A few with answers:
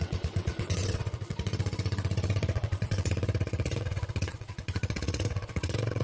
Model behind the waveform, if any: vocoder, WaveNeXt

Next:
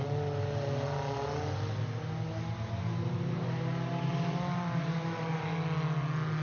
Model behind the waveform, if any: none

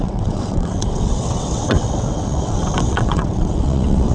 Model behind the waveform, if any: vocoder, WaveNeXt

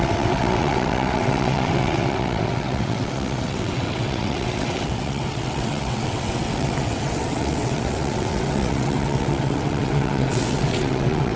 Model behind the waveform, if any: vocoder, WaveNeXt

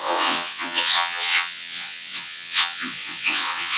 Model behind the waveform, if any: vocoder, WaveNeXt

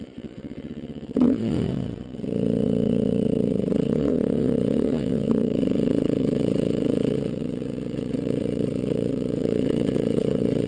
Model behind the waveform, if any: vocoder, WaveNeXt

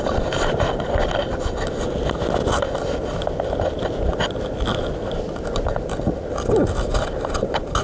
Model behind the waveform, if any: none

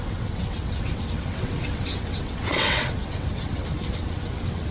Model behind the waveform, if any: vocoder, WaveNeXt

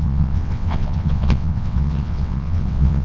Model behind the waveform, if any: vocoder, WaveNeXt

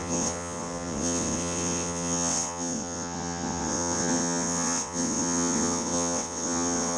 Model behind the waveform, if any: vocoder, WaveNeXt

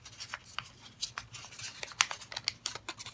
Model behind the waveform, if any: none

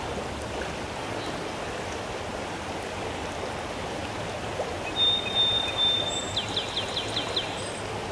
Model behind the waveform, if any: none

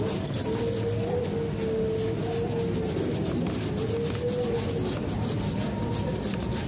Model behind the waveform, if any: none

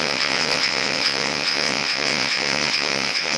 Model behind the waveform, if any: vocoder, WaveNeXt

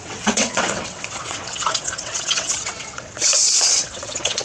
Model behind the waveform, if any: vocoder, WaveNeXt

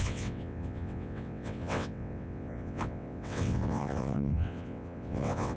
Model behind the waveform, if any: vocoder, WaveNeXt